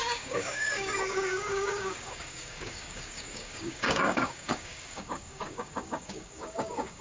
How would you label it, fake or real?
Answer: fake